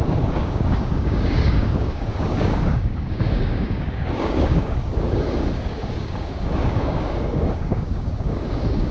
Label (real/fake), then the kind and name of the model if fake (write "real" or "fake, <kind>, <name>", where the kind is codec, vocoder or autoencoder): fake, codec, DAC